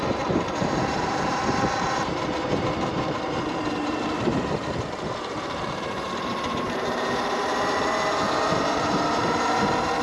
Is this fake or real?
fake